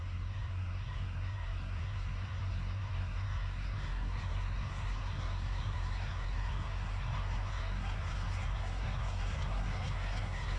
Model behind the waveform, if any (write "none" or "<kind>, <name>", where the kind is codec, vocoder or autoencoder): codec, SNAC